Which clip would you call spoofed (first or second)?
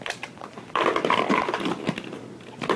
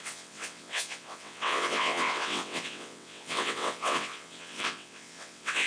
second